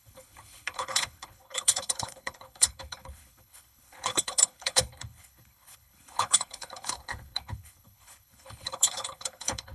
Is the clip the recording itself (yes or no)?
no